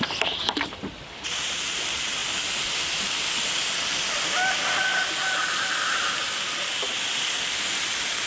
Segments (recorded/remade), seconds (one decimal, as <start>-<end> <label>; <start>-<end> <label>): 0.0-4.9 recorded; 4.9-6.2 remade; 6.2-8.3 recorded